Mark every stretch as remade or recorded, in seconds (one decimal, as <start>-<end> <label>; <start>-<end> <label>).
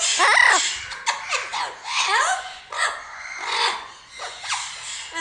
0.0-1.5 recorded; 1.5-4.6 remade; 4.6-5.2 recorded